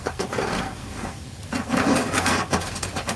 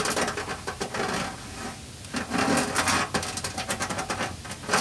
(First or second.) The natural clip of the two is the second